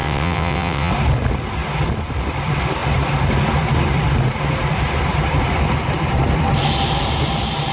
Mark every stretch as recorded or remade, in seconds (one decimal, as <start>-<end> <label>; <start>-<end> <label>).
0.0-0.9 remade; 0.9-7.7 recorded